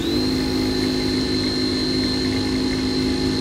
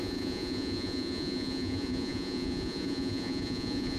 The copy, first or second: second